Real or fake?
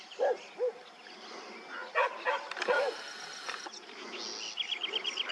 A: real